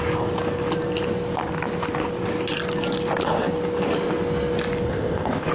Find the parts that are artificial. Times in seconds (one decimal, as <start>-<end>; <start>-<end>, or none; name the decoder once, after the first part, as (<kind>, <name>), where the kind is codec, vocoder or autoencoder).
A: 4.9-5.5 (codec, ZipCodec)